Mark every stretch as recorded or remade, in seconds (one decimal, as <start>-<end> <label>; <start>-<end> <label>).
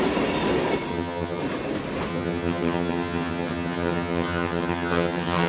0.0-0.9 recorded; 0.9-1.4 remade; 1.4-2.1 recorded; 2.1-5.5 remade